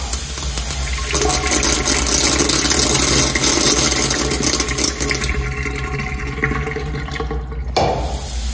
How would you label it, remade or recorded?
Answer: recorded